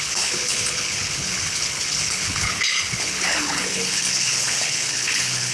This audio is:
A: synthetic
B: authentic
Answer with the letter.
A